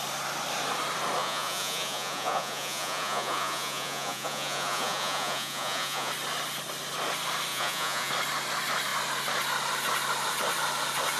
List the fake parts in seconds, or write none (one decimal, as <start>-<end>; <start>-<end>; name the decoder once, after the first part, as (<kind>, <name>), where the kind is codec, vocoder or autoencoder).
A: 1.2-6.1 (vocoder, Vocos); 7.5-8.1